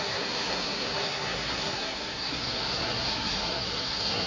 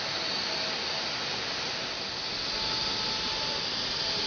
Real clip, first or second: second